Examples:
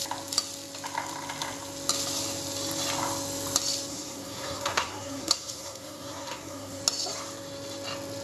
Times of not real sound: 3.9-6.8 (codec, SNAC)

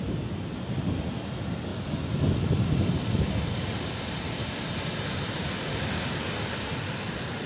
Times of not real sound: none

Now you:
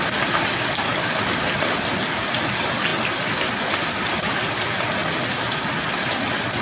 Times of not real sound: none

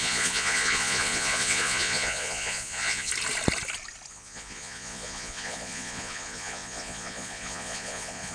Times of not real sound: 0.0-3.1 (vocoder, Vocos); 4.1-8.3

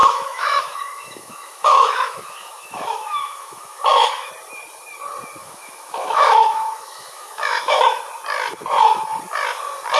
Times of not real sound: 0.0-4.3 (autoencoder, DAC-VAE); 5.4-8.0

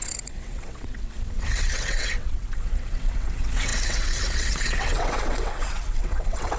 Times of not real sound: 0.0-6.6 (vocoder, WaveNeXt)